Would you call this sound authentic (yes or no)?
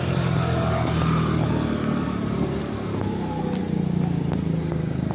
yes